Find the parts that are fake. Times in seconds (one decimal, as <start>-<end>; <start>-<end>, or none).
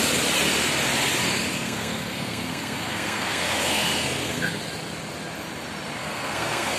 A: 1.5-4.6; 6.0-6.8